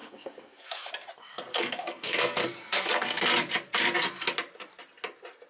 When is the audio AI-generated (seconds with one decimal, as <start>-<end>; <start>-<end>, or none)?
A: 0.0-0.9; 1.5-3.2